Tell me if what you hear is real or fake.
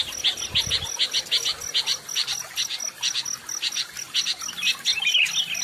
real